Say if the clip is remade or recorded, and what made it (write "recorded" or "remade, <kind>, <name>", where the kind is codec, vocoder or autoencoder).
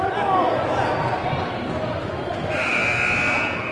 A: recorded